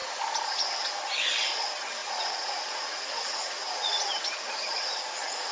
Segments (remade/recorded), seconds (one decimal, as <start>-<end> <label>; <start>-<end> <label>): 0.0-2.0 recorded; 2.0-5.5 remade